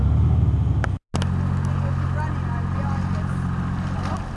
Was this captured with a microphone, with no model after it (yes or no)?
yes